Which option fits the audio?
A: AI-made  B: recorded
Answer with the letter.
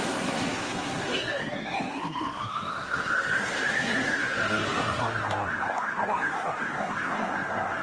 A